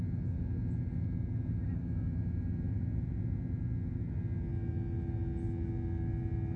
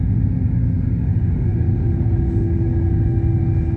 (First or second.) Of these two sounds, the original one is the first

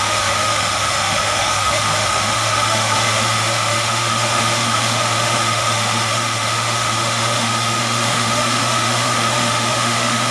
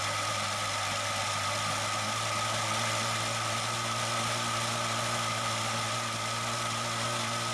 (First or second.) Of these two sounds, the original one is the second